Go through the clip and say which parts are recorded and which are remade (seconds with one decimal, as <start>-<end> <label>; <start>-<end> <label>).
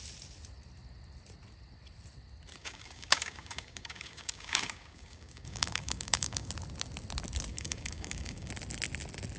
0.0-2.6 recorded; 2.6-6.5 remade; 6.5-7.5 recorded; 7.5-8.5 remade; 8.5-9.4 recorded